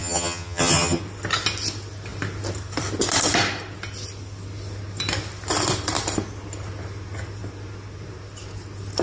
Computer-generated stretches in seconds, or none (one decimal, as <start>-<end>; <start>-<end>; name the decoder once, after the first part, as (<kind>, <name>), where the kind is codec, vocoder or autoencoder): 0.0-1.0 (vocoder, HiFi-GAN)